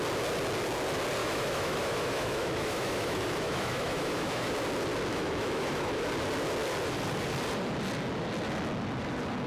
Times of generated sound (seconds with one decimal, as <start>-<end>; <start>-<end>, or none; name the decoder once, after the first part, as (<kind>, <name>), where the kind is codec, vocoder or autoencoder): 1.2-4.5 (autoencoder, DAC-VAE); 5.1-6.1